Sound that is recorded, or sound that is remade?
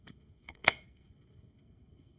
remade